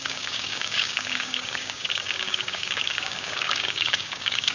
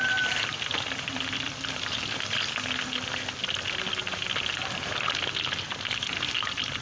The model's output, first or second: first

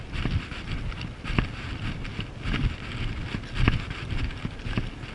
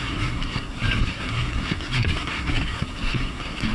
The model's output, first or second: second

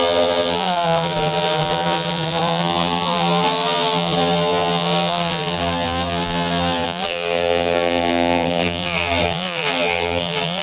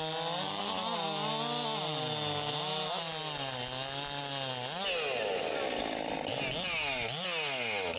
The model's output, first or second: first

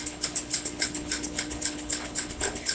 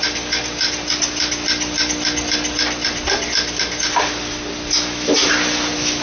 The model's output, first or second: first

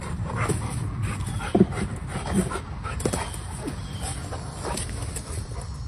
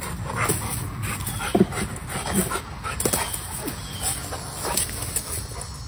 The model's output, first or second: first